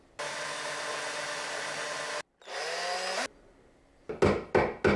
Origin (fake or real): real